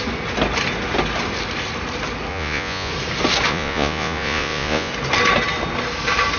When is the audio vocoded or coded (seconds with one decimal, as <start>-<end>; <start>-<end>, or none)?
2.3-2.9; 3.5-4.9